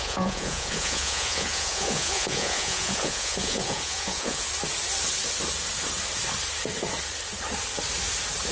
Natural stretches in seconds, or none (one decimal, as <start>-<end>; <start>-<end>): 4.5-8.5